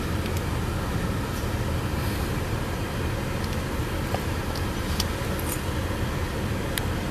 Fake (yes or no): no